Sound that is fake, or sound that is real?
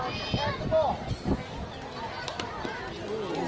real